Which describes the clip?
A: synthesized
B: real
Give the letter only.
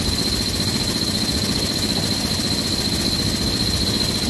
B